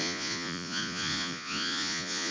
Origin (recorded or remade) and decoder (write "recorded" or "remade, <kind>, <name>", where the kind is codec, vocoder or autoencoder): remade, vocoder, Vocos